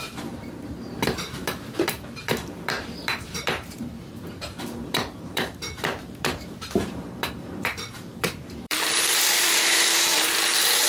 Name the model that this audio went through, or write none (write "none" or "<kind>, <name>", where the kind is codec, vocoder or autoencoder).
vocoder, BigVGAN v2